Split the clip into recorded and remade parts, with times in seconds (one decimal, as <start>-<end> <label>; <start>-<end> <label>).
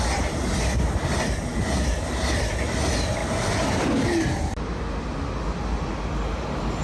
0.0-6.8 recorded